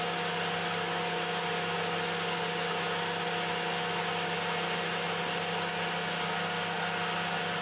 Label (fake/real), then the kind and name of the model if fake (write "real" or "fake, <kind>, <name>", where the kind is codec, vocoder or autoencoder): real